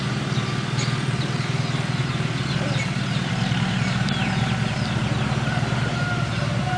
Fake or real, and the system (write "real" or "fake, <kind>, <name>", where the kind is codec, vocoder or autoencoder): real